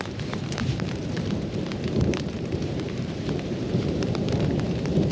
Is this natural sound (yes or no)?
no